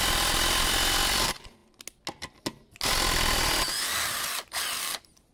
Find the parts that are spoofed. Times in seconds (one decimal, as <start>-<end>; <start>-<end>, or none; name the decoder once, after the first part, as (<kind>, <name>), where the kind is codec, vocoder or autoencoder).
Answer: none